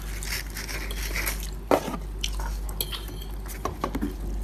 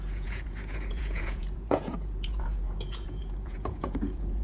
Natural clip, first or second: first